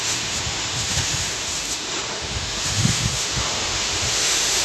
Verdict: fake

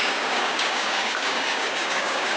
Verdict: fake